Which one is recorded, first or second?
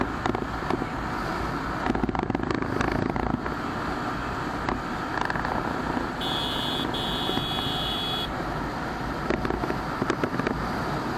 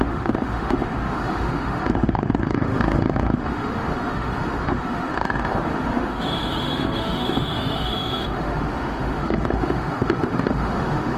first